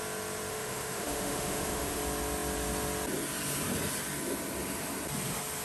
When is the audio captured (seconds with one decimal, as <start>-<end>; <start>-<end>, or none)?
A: 0.0-0.5; 2.0-5.6